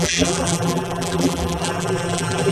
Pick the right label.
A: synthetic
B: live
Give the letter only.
A